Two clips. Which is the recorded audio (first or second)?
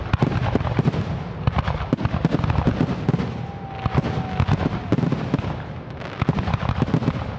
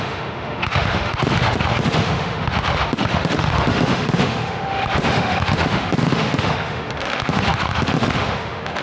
first